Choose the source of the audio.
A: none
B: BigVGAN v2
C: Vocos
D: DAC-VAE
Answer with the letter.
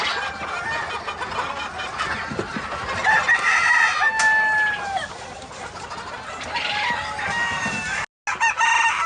A